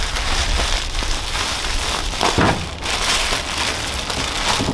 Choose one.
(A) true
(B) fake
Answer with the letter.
A